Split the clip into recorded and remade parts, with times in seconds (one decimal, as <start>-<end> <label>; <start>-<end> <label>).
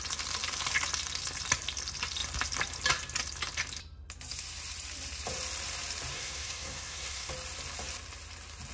0.0-6.1 recorded; 6.1-7.3 remade; 7.3-8.7 recorded